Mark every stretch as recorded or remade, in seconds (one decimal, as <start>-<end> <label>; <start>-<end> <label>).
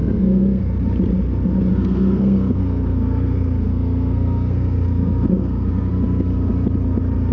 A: 0.0-0.6 remade; 0.6-1.7 recorded; 1.7-5.9 remade; 5.9-7.3 recorded